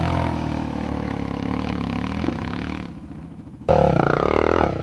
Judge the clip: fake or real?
fake